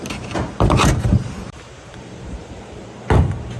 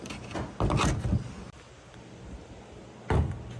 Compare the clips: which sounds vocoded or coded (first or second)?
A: first